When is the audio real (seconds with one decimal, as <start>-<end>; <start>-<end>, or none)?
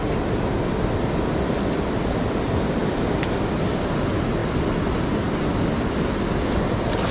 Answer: 0.0-7.1